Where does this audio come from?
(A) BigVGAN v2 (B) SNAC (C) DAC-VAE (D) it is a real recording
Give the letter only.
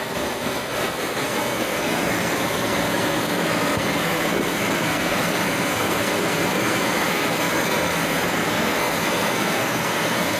B